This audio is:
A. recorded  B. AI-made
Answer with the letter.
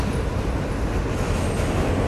A